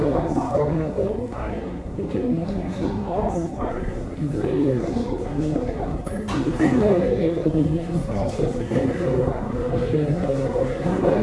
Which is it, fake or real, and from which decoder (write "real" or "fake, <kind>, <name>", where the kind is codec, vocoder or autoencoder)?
fake, codec, SNAC